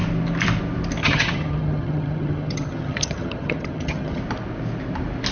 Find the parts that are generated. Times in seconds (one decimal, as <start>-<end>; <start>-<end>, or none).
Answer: 1.0-4.2